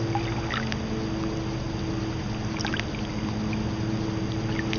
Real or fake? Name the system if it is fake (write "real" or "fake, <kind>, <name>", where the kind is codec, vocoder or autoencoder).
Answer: real